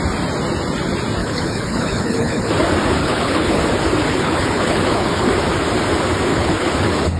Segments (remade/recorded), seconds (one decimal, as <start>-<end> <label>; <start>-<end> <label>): 0.0-1.2 recorded; 1.2-2.5 remade; 2.5-3.0 recorded; 3.0-3.6 remade; 3.6-4.0 recorded; 4.0-5.3 remade; 5.3-6.3 recorded; 6.3-7.2 remade